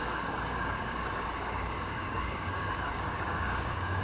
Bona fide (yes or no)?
no